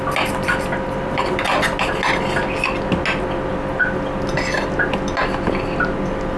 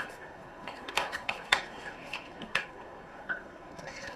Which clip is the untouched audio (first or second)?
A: first